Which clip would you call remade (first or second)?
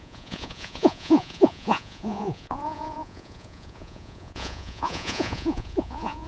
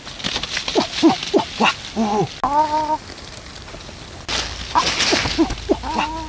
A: first